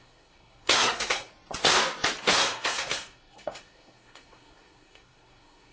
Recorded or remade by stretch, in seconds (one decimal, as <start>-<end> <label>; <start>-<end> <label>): 0.0-1.3 remade; 1.3-2.2 recorded; 2.2-5.7 remade